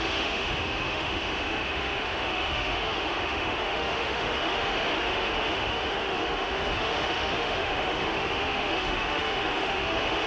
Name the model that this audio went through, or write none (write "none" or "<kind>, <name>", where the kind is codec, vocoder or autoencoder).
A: autoencoder, DAC-VAE